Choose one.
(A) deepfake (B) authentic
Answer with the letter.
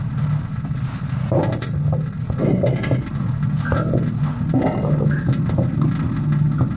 B